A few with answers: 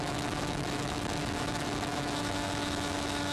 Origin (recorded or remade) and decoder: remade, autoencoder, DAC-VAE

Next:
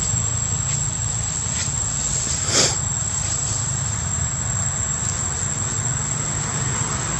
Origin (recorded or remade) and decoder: recorded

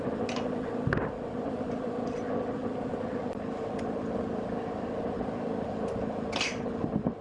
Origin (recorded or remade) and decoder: recorded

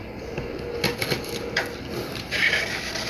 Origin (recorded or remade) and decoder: recorded